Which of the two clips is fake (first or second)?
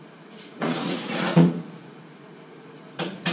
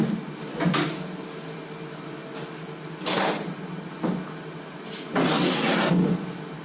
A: first